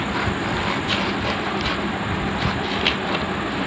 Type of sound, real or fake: real